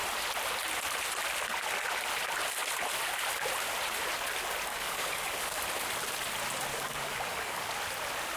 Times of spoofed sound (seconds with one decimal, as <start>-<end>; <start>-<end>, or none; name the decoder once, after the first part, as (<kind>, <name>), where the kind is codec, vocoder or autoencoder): 4.7-5.6 (codec, DAC); 6.7-7.7

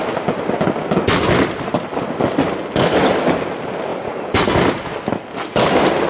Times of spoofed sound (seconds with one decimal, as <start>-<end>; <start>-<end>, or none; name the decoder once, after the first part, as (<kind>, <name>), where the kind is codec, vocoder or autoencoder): none

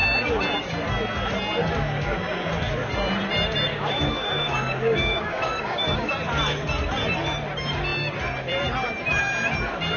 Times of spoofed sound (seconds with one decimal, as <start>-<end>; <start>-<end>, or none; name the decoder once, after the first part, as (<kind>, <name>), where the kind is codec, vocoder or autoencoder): 3.7-6.1 (codec, DAC)